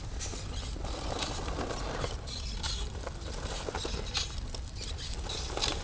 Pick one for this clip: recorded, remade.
recorded